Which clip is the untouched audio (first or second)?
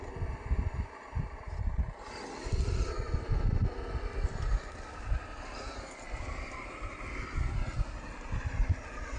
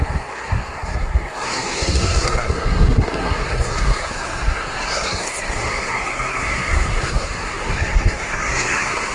first